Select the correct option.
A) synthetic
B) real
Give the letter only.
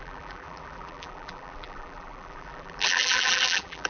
A